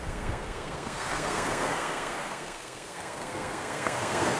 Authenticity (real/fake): fake